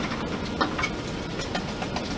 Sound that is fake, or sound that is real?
real